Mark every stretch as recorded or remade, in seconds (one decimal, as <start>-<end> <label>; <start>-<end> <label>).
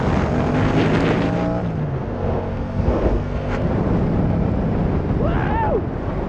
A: 0.0-1.8 recorded; 1.8-3.7 remade; 3.7-6.3 recorded